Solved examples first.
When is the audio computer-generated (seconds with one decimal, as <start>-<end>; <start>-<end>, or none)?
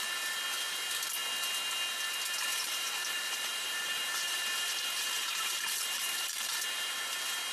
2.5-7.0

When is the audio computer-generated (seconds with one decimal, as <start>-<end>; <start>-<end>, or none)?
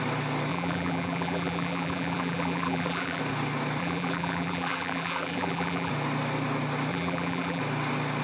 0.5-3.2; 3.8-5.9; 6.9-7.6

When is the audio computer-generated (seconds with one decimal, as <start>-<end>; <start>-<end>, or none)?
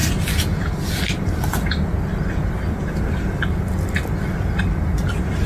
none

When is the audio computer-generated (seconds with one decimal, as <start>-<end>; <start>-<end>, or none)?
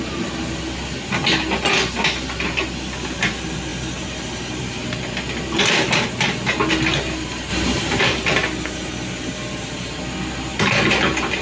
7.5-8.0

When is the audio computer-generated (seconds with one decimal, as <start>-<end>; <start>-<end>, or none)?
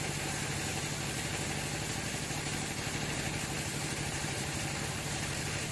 0.0-0.7; 4.1-5.7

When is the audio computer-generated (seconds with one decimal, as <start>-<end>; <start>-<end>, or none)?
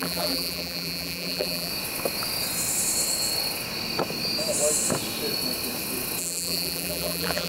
0.0-1.7; 6.2-7.5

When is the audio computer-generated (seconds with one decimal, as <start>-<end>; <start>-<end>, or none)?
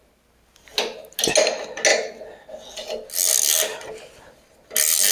none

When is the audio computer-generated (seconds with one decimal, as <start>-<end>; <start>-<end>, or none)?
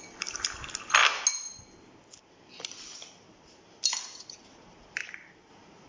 5.0-5.5